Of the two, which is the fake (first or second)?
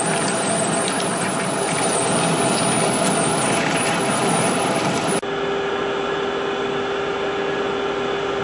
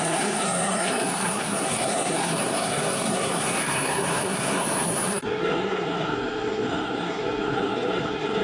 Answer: second